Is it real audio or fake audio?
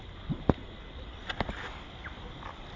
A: real